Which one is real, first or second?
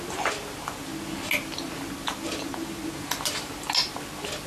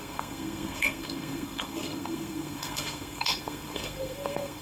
first